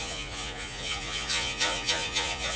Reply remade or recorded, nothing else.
remade